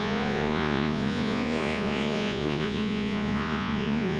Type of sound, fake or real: fake